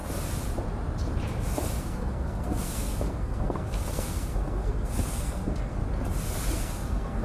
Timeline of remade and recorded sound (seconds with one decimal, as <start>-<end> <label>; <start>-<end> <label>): 0.0-1.8 recorded; 1.8-5.8 remade; 5.8-6.5 recorded; 6.5-7.2 remade